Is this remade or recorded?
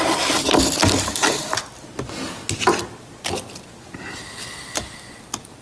recorded